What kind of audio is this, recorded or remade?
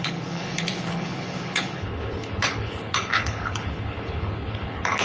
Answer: remade